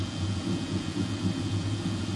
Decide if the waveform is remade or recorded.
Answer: remade